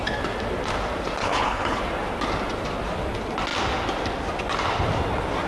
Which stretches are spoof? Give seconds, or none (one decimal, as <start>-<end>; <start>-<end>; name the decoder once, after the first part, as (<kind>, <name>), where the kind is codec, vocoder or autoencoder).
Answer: 1.2-1.8 (codec, HILCodec)